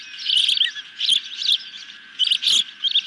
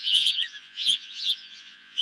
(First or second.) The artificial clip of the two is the second